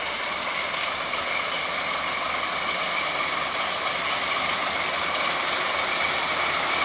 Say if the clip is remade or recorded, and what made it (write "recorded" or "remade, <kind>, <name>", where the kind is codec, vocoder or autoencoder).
recorded